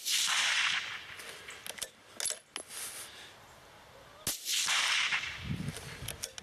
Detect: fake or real real